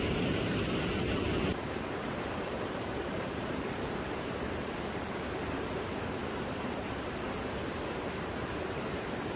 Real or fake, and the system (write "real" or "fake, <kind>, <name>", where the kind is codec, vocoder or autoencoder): fake, vocoder, BigVGAN v2